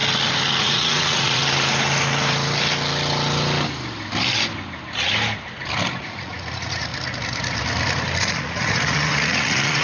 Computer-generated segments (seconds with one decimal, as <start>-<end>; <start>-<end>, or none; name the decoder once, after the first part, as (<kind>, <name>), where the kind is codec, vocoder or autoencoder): 0.6-1.4 (vocoder, Vocos); 6.0-6.9; 8.2-9.8